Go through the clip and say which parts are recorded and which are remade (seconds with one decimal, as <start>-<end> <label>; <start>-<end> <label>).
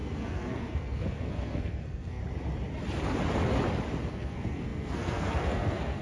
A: 0.0-2.2 remade; 2.2-4.1 recorded; 4.1-6.0 remade